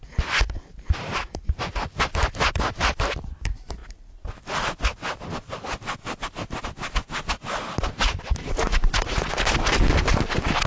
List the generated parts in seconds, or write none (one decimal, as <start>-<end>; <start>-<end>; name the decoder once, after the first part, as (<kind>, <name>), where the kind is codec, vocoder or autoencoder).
8.4-9.2 (vocoder, Vocos)